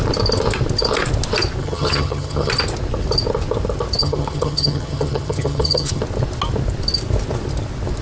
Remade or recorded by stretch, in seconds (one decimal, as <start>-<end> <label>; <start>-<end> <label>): 0.0-1.6 recorded; 1.6-2.5 remade; 2.5-4.0 recorded; 4.0-6.0 remade; 6.0-8.0 recorded